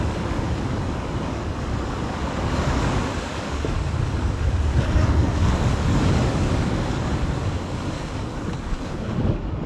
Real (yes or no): no